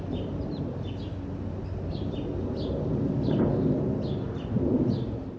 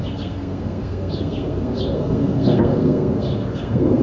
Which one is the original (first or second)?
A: first